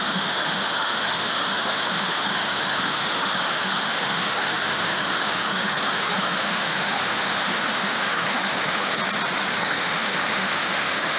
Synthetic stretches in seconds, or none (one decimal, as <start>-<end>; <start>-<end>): 0.0-9.0; 9.5-11.2